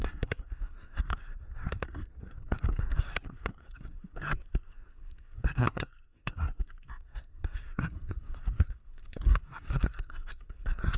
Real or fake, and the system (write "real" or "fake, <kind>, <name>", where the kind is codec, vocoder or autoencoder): fake, codec, SNAC